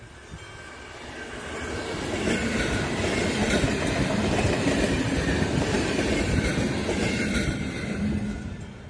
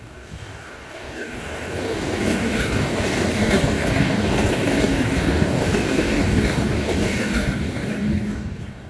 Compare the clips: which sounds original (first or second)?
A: first